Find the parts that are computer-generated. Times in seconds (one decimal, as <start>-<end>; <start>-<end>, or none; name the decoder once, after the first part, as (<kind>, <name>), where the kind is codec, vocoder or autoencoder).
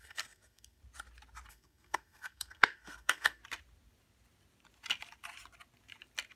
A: 0.0-0.8 (codec, SNAC); 1.5-3.4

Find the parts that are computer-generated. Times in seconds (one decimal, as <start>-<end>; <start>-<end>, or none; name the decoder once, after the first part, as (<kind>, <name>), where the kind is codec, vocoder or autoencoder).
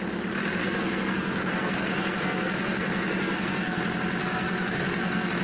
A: 0.6-3.8 (codec, SNAC); 4.2-5.4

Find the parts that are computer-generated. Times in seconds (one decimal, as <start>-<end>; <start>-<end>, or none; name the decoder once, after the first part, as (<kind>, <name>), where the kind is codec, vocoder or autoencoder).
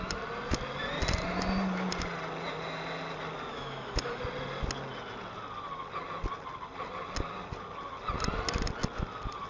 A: 3.5-4.2 (autoencoder, DAC-VAE)